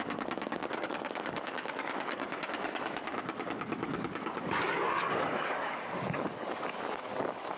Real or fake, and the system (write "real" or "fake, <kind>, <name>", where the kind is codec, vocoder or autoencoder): fake, codec, DAC